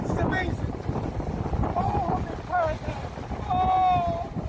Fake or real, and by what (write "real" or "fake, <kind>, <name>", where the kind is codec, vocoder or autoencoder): real